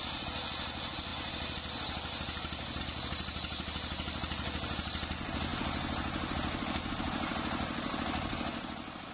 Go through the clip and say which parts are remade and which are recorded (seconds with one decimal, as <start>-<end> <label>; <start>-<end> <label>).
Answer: 0.0-9.1 recorded